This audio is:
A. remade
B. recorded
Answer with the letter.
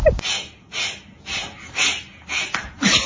B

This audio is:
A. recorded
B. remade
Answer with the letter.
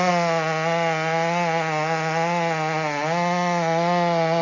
A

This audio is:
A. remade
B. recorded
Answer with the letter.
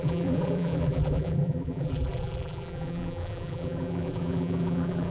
A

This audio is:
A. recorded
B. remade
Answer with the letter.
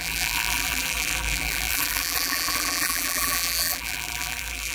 B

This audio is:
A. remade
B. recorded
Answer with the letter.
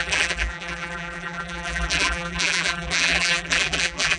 A